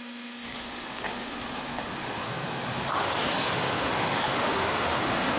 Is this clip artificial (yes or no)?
yes